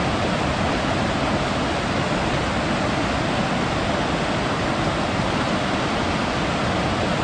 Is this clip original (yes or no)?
yes